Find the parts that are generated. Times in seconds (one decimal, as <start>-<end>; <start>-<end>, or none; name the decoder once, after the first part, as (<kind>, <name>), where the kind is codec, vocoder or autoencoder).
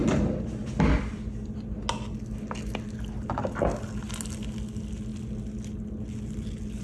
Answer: none